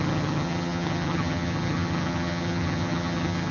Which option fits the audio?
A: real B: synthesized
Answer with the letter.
B